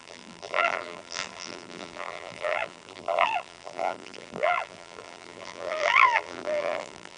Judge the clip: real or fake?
fake